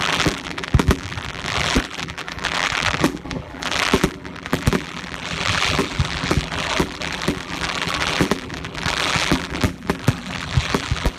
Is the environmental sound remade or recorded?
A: remade